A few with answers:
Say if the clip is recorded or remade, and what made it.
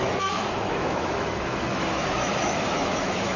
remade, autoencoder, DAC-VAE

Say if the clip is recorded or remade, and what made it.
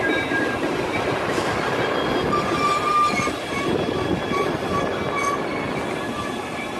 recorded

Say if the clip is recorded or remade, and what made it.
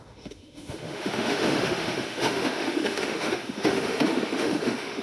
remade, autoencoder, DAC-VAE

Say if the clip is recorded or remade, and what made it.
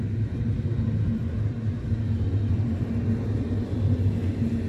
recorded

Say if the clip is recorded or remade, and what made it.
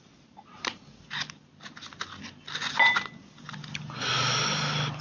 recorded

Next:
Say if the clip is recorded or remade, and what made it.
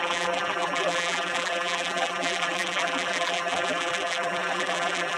remade, vocoder, BigVGAN v2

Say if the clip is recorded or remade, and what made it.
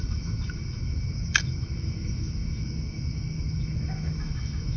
remade, autoencoder, DAC-VAE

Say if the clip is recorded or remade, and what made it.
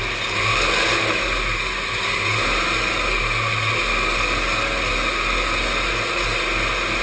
recorded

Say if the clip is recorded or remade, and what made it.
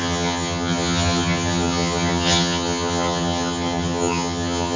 remade, vocoder, HiFi-GAN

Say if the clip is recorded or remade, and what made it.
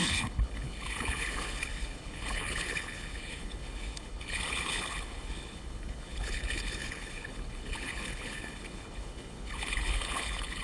remade, codec, HILCodec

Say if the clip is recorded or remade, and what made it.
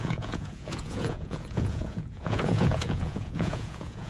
remade, vocoder, Vocos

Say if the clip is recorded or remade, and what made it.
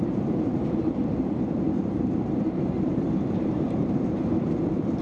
remade, vocoder, BigVGAN v2